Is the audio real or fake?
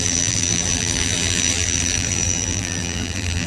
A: fake